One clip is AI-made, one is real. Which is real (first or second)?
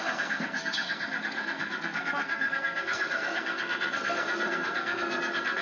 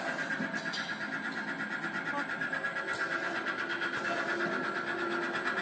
second